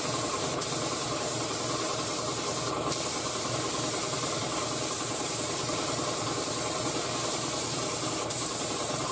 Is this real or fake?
fake